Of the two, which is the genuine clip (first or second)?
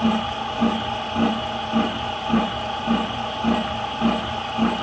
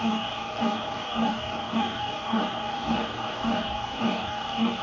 first